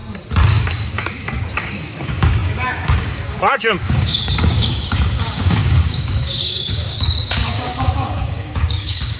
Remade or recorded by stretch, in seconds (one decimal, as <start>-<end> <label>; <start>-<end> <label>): 0.0-0.6 recorded; 0.6-9.2 remade